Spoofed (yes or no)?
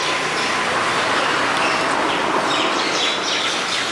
no